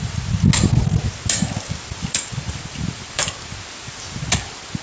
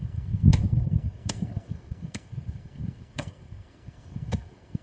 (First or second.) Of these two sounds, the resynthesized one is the second